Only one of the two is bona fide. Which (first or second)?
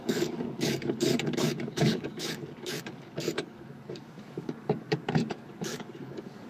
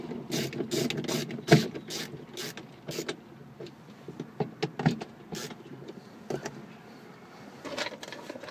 second